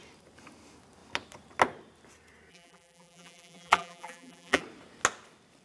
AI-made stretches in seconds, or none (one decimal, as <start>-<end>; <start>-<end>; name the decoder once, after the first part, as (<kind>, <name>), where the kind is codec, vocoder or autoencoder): 2.5-4.6 (vocoder, BigVGAN v2)